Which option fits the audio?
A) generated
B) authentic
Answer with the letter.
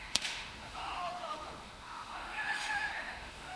A